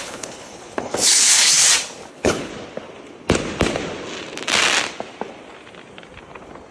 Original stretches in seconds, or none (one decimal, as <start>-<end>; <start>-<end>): 1.6-2.1; 2.5-6.7